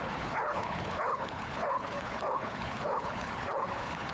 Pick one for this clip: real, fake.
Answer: fake